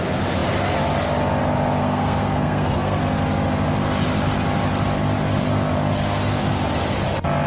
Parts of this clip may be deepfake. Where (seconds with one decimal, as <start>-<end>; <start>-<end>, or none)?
1.8-3.0